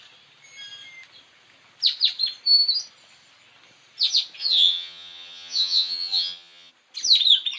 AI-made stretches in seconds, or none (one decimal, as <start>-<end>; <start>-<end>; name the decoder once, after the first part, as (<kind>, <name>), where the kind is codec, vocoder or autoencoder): 4.4-6.7 (vocoder, HiFi-GAN)